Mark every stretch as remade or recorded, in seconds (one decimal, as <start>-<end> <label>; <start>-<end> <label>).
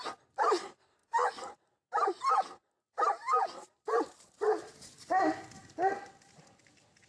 0.0-7.1 recorded